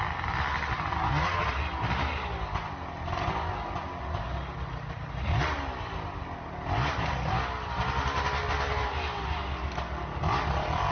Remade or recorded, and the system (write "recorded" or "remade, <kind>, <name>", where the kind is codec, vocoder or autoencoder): recorded